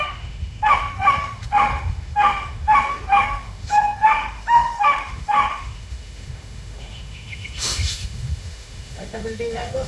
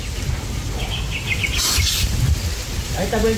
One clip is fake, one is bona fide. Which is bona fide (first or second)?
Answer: second